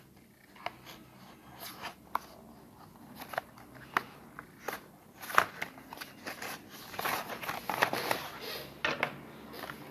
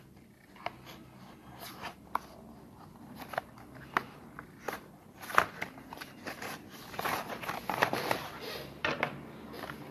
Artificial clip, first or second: second